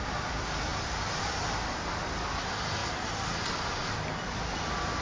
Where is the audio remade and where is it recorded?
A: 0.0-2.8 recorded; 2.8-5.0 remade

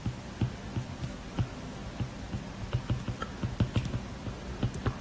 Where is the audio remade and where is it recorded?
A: 0.0-5.0 recorded